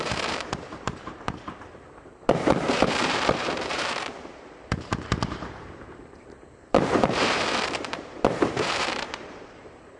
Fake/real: fake